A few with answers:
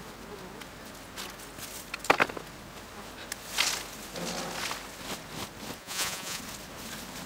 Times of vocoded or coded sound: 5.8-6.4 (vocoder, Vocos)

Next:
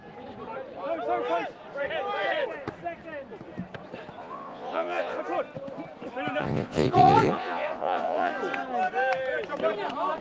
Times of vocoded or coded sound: 4.2-5.2 (vocoder, Vocos); 6.4-8.3

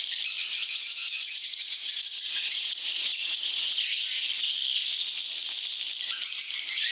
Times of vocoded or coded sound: 0.4-3.9 (vocoder, Vocos)

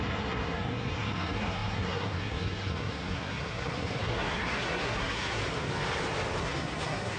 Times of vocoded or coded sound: 0.0-5.4 (codec, SNAC); 6.4-7.2